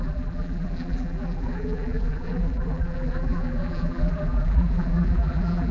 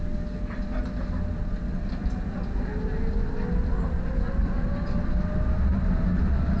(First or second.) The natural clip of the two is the second